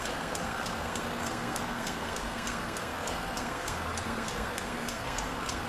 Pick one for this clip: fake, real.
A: fake